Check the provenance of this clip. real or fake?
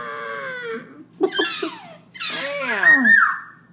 real